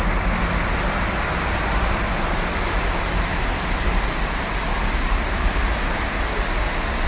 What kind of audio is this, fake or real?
real